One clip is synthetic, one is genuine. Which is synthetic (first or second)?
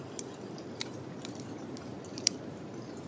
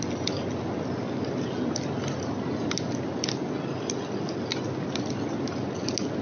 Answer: first